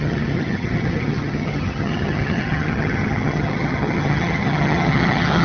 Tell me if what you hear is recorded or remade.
remade